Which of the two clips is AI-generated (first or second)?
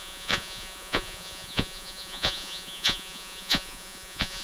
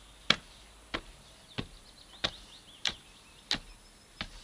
first